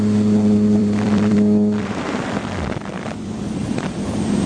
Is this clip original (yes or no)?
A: no